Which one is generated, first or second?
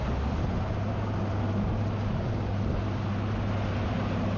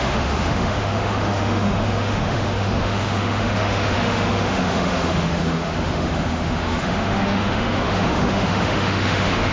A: second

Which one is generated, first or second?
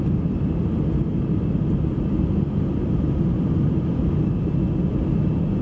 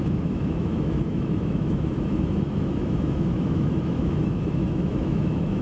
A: second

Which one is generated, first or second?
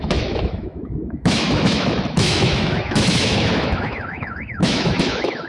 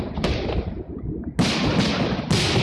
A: first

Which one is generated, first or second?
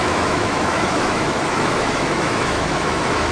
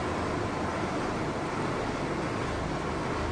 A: first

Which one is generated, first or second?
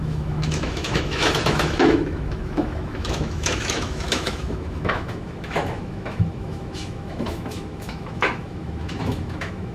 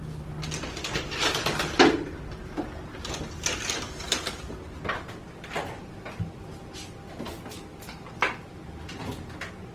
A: first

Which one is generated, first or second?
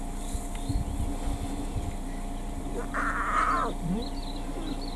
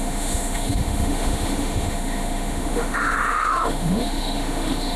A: second